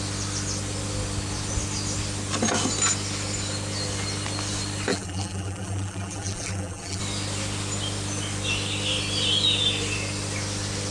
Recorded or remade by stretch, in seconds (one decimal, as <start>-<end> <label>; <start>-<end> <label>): 0.0-4.9 recorded; 4.9-7.0 remade; 7.0-10.9 recorded